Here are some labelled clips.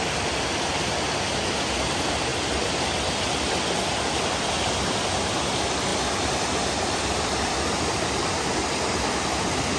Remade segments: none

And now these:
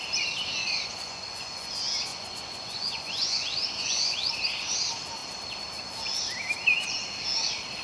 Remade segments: 0.6-1.7 (vocoder, Vocos); 2.1-4.3

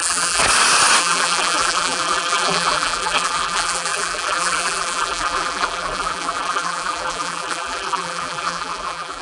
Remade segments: 0.0-0.4 (vocoder, BigVGAN v2); 1.0-9.2

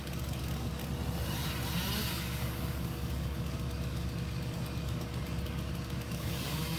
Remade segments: 0.0-0.8 (codec, DAC); 2.1-6.8

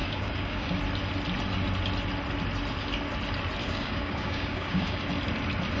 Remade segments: 0.0-0.8 (codec, DAC); 3.6-5.0

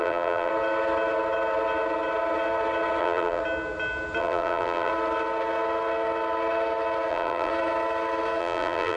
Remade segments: 0.0-0.5 (vocoder, BigVGAN v2); 3.0-3.4; 4.2-4.9; 7.1-7.5; 8.4-9.0

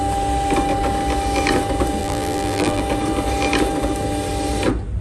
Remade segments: 2.0-2.8 (vocoder, BigVGAN v2)